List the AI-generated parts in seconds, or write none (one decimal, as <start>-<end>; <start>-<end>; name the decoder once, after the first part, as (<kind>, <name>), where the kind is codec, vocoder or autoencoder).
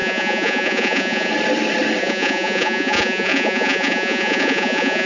0.0-1.3 (vocoder, Vocos); 2.0-5.1